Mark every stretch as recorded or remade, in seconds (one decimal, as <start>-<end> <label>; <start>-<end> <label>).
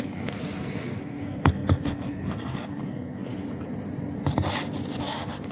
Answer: 0.0-3.3 remade; 3.3-5.0 recorded; 5.0-5.5 remade